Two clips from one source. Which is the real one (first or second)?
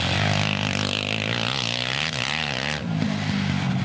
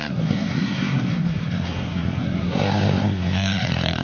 first